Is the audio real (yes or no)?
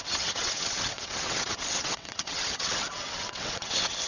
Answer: no